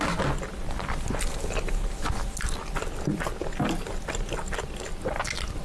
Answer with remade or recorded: recorded